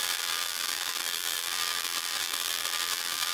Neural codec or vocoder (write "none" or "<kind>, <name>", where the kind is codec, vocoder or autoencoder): vocoder, BigVGAN v2